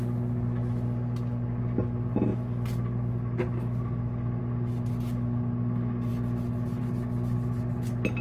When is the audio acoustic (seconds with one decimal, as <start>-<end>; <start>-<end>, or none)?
0.0-8.2